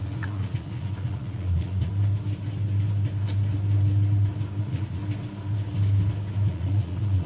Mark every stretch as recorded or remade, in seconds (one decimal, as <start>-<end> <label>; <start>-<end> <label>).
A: 0.0-1.9 remade; 1.9-4.6 recorded; 4.6-5.0 remade; 5.0-6.5 recorded; 6.5-7.3 remade